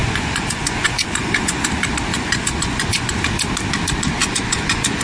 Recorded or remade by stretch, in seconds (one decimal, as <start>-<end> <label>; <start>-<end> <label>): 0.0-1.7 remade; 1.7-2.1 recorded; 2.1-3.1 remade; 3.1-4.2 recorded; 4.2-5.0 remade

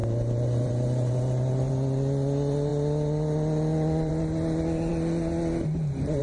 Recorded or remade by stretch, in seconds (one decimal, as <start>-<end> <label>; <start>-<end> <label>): 0.0-1.7 remade; 1.7-6.2 recorded

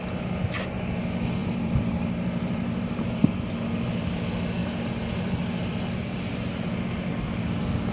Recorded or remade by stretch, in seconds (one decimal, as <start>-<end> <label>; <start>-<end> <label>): 0.0-1.4 recorded; 1.4-3.5 remade; 3.5-7.9 recorded